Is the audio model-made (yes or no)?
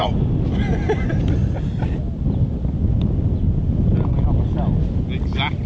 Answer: no